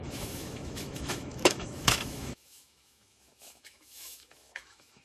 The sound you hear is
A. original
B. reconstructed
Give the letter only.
B